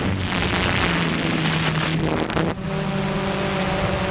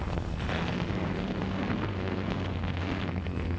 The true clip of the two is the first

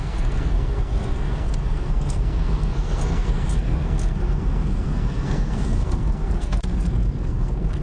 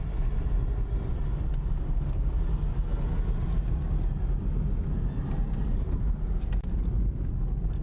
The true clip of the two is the second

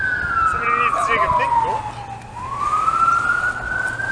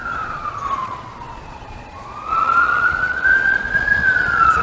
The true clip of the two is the first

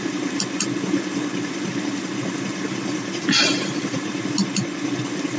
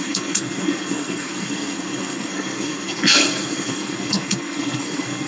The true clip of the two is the first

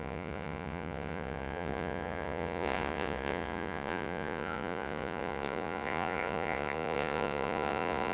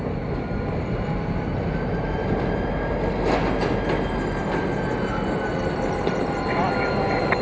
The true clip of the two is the second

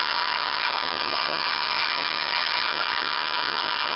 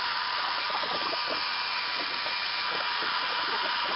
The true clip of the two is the second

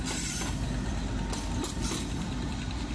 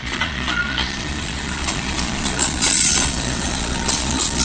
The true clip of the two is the first